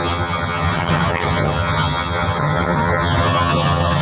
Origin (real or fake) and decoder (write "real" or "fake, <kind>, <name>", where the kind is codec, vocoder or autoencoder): fake, vocoder, HiFi-GAN